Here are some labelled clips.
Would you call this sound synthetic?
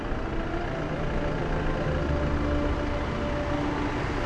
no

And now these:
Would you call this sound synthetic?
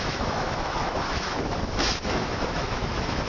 yes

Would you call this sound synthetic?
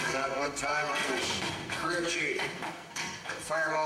yes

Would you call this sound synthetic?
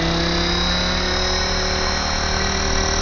no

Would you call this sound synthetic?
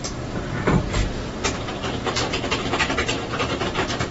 yes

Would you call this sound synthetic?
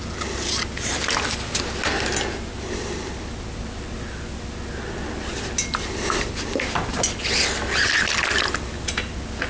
no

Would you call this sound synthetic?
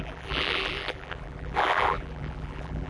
yes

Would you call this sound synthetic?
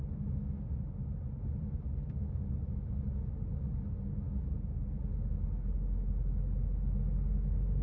no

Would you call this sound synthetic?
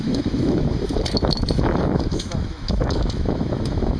yes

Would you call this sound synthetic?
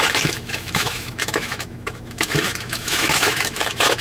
yes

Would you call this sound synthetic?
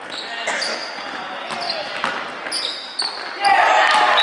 no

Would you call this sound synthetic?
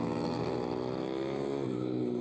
no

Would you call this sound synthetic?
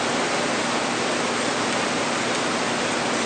no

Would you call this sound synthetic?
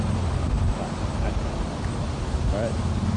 no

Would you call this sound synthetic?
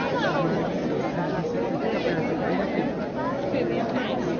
no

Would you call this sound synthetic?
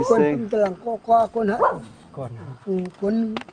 no